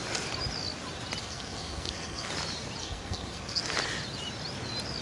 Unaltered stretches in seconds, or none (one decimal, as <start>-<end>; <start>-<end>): 0.0-1.2; 2.3-2.8; 3.6-5.0